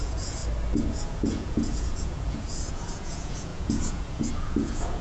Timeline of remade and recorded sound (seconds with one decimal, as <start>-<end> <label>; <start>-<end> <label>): 0.0-0.4 remade; 0.4-0.9 recorded; 0.9-5.0 remade